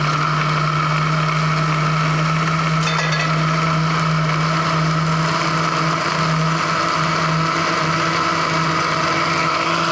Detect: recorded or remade recorded